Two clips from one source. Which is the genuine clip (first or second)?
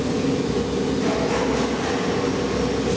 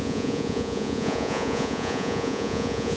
first